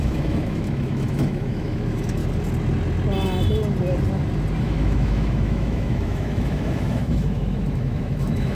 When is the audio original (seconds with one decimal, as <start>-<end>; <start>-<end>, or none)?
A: 2.2-4.6